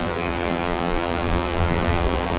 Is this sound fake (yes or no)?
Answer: yes